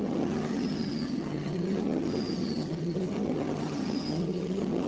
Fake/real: fake